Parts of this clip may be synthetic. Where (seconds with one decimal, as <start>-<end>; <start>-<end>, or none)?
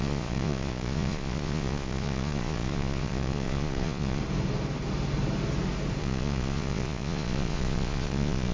0.0-4.2; 6.0-8.5